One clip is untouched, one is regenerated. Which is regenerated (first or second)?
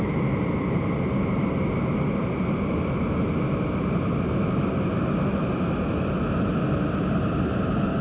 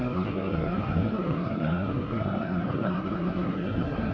second